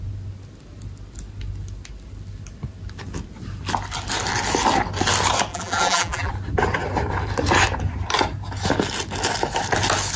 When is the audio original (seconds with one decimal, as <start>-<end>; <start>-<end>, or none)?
0.0-5.5; 6.3-10.2